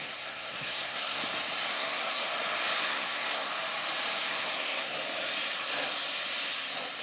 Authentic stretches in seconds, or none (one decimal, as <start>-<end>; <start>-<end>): 1.2-1.7; 2.2-2.8; 3.5-4.3; 5.0-7.0